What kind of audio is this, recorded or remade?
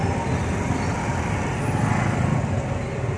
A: recorded